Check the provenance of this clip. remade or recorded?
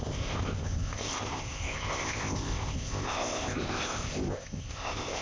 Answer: remade